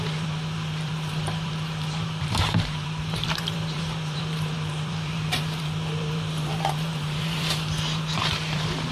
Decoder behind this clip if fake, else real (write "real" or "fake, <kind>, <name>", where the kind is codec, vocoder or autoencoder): fake, vocoder, BigVGAN v2